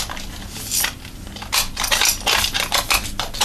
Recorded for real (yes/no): yes